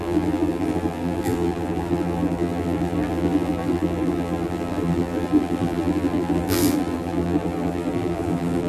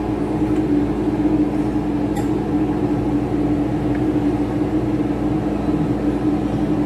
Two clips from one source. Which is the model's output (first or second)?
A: first